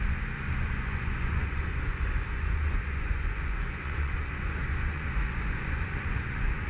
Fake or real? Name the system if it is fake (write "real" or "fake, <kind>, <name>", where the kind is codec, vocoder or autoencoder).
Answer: fake, vocoder, Vocos